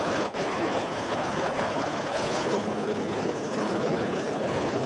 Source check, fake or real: fake